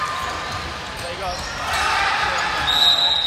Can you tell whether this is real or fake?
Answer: real